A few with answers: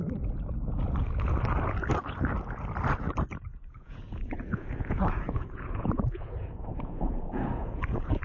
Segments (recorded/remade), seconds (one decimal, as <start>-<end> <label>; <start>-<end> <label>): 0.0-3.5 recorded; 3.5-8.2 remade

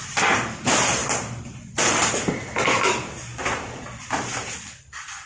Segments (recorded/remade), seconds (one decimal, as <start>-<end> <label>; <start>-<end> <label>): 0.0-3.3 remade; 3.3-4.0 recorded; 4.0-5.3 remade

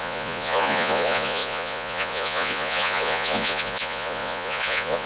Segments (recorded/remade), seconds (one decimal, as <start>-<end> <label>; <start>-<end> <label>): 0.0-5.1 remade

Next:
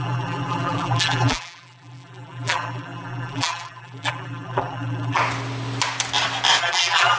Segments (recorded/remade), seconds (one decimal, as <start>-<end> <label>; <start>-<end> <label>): 0.0-5.2 remade; 5.2-6.6 recorded; 6.6-7.2 remade

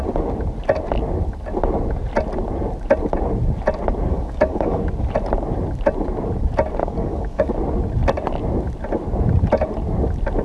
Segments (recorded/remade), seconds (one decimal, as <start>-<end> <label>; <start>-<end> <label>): 0.0-4.1 recorded; 4.1-4.8 remade; 4.8-6.8 recorded; 6.8-7.5 remade; 7.5-10.4 recorded

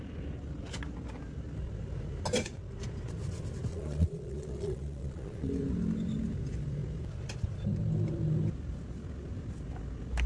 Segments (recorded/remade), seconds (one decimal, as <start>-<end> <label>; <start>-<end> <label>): 0.0-3.7 recorded; 3.7-5.5 remade; 5.5-10.3 recorded